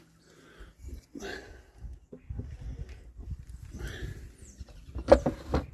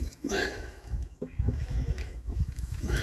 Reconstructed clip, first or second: second